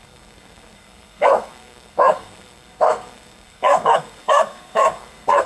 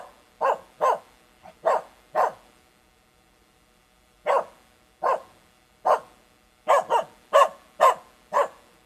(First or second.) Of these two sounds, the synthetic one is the first